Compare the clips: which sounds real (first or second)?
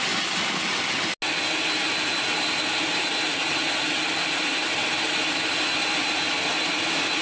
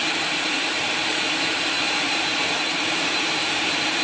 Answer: first